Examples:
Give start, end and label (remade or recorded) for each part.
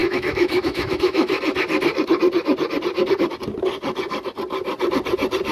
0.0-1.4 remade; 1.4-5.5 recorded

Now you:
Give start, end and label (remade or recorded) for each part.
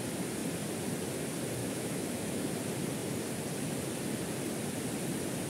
0.0-1.6 recorded; 1.6-2.5 remade; 2.5-5.5 recorded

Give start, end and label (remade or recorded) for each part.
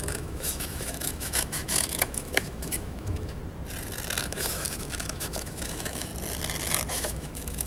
0.0-3.4 remade; 3.4-4.2 recorded; 4.2-6.1 remade; 6.1-6.9 recorded; 6.9-7.7 remade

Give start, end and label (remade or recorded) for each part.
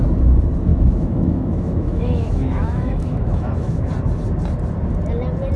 0.0-0.7 recorded; 0.7-3.9 remade; 3.9-5.6 recorded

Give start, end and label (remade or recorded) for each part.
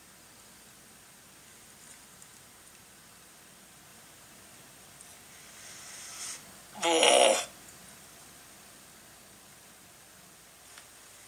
0.0-11.3 recorded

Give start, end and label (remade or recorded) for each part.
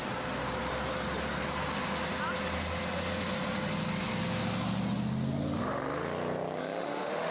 0.0-6.6 recorded; 6.6-7.3 remade